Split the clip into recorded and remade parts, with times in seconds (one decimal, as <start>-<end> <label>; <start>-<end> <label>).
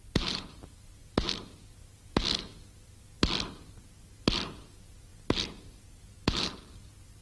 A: 0.0-7.2 recorded